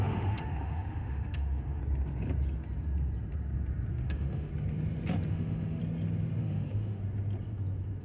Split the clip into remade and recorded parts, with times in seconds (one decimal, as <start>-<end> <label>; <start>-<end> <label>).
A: 0.0-1.8 remade; 1.8-3.9 recorded; 3.9-4.5 remade; 4.5-5.3 recorded; 5.3-5.8 remade; 5.8-6.4 recorded; 6.4-7.0 remade; 7.0-8.0 recorded